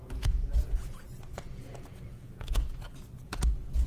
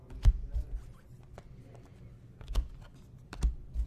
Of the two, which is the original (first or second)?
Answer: second